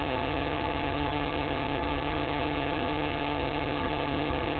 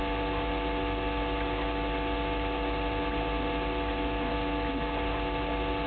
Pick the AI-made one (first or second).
first